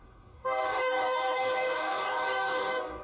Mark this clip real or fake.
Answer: fake